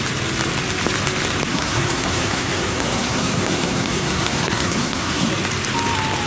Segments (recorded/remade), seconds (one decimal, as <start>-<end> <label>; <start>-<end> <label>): 0.0-1.5 recorded; 1.5-5.3 remade; 5.3-6.3 recorded